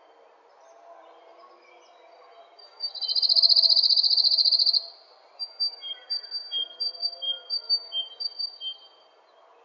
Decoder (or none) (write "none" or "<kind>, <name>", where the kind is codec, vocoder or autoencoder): none